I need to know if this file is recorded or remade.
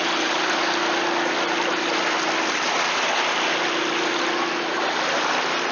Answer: recorded